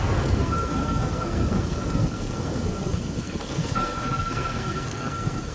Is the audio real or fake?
fake